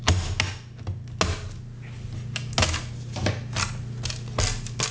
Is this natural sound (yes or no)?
yes